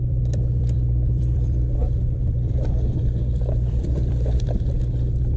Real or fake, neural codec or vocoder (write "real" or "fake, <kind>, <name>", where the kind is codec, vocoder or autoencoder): fake, vocoder, BigVGAN v2